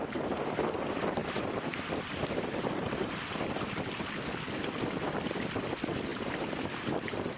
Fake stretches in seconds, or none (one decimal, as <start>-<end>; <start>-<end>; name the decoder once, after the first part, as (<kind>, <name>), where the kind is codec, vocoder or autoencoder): none